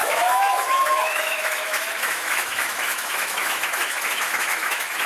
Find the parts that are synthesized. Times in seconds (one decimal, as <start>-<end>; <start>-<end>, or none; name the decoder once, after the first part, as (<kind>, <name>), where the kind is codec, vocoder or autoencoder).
0.0-5.1 (autoencoder, DAC-VAE)